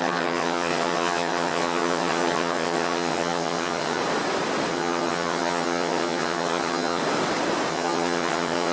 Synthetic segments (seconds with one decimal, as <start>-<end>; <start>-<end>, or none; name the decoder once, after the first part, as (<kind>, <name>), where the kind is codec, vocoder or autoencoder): 0.0-4.0 (vocoder, HiFi-GAN); 4.7-7.0; 7.7-8.7